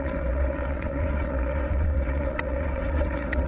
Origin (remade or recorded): remade